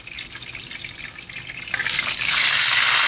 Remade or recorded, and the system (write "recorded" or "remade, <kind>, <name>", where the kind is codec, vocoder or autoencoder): recorded